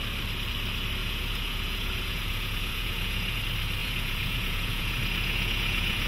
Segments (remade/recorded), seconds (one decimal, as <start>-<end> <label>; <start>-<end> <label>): 0.0-1.0 recorded; 1.0-3.4 remade; 3.4-3.8 recorded; 3.8-6.1 remade